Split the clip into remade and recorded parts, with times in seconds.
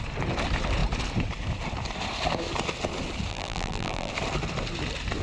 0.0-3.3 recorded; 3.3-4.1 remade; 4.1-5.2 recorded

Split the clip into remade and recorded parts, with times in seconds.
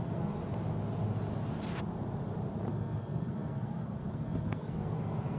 0.0-0.4 remade; 0.4-2.7 recorded; 2.7-5.4 remade